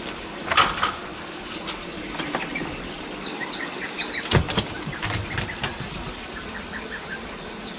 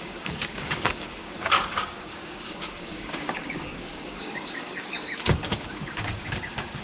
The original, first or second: first